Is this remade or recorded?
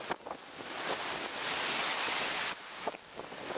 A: recorded